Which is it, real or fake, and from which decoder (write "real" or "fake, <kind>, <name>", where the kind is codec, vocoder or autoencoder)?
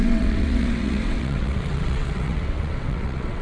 fake, vocoder, WaveNeXt